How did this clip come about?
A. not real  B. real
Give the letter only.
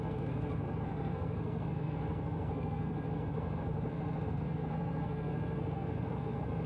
A